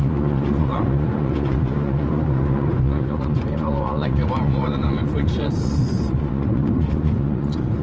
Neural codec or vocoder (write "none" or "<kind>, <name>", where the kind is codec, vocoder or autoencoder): vocoder, Vocos